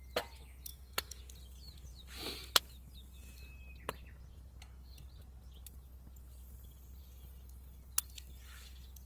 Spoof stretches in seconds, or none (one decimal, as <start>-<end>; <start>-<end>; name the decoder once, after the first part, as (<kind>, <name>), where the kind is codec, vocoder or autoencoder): 0.7-1.2 (autoencoder, DAC-VAE)